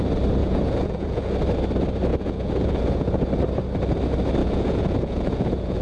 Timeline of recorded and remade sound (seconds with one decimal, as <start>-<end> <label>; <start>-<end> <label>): 0.0-0.4 recorded; 0.4-1.3 remade; 1.3-2.1 recorded; 2.1-3.2 remade; 3.2-4.4 recorded; 4.4-5.8 remade